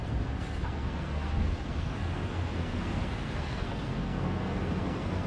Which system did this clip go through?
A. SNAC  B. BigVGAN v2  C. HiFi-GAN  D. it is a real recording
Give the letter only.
A